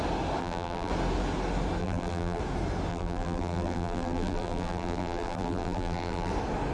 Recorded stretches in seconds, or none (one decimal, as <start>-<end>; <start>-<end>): 0.0-0.4; 0.9-1.8; 2.4-2.9; 6.3-6.7